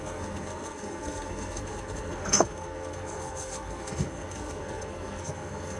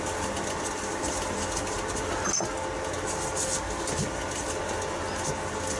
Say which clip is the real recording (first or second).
second